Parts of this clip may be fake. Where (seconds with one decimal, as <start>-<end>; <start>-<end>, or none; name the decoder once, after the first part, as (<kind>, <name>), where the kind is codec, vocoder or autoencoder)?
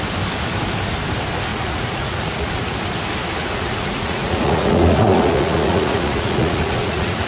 1.5-2.5 (vocoder, Vocos); 3.4-7.3